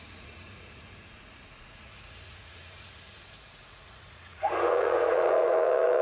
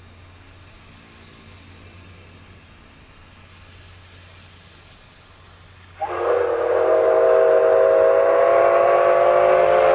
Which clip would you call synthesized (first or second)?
first